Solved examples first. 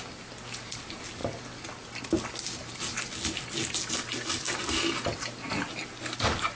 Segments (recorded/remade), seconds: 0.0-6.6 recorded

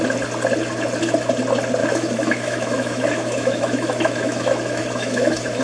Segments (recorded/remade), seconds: 0.0-1.8 recorded; 1.8-5.6 remade

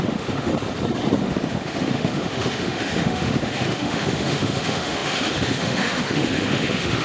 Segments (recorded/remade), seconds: 0.0-0.5 remade; 0.5-1.2 recorded; 1.2-7.0 remade

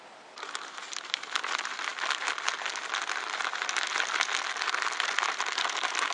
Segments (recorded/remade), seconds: 0.0-6.1 recorded

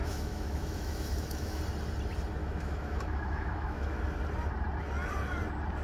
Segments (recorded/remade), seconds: 0.0-1.6 remade; 1.6-2.4 recorded; 2.4-4.0 remade; 4.0-5.8 recorded

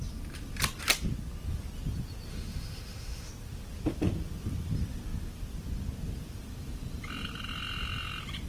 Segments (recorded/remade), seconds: 0.0-2.3 recorded; 2.3-3.3 remade; 3.3-8.5 recorded